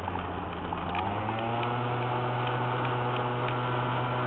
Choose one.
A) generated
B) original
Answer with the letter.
B